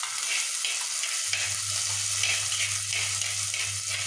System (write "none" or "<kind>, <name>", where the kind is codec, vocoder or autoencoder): none